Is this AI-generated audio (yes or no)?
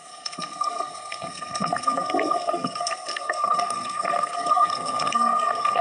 yes